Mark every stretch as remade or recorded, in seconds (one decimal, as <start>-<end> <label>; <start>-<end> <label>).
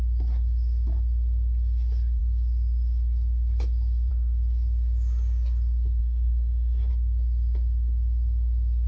0.0-6.0 recorded; 6.0-6.9 remade; 6.9-8.9 recorded